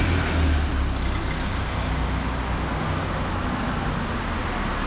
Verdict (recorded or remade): recorded